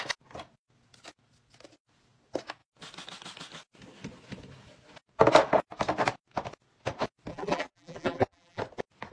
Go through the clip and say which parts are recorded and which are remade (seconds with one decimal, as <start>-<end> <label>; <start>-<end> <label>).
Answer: 0.0-7.3 recorded; 7.3-8.6 remade; 8.6-9.1 recorded